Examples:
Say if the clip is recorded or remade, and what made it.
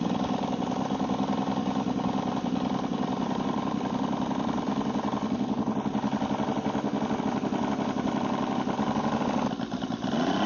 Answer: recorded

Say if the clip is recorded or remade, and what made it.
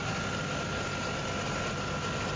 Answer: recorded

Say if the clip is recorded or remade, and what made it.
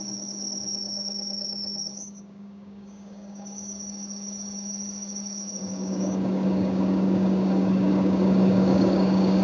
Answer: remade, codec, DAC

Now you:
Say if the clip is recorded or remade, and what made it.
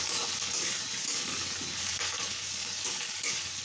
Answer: remade, codec, DAC